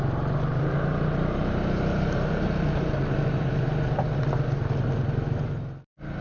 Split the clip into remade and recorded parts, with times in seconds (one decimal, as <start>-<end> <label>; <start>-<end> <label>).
0.0-0.5 recorded; 0.5-3.6 remade; 3.6-6.2 recorded